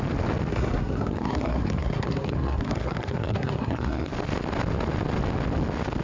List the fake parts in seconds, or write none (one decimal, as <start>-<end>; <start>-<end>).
0.5-4.1